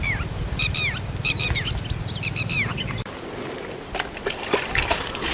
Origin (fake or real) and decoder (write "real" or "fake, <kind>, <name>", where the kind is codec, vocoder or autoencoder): real